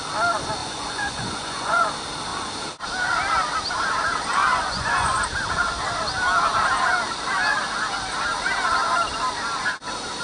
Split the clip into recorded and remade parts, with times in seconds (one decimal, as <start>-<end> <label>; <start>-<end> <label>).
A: 0.0-0.6 recorded; 0.6-1.9 remade; 1.9-4.4 recorded; 4.4-5.2 remade; 5.2-10.2 recorded